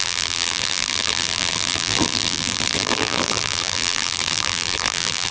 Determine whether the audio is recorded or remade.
remade